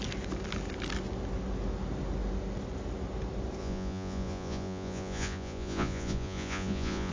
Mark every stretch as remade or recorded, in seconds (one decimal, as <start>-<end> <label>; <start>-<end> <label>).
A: 0.0-3.6 recorded; 3.6-7.1 remade